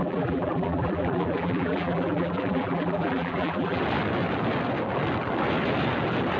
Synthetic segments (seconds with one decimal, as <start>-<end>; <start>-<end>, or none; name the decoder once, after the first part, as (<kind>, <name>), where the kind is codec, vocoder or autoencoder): 0.0-3.8 (vocoder, BigVGAN v2)